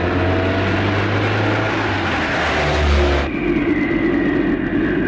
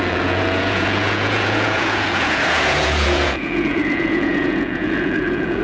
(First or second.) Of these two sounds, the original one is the first